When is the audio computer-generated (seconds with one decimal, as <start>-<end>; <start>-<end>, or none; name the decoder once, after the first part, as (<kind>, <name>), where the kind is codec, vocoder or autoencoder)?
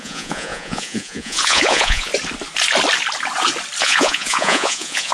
0.0-2.1 (vocoder, Vocos); 3.8-5.1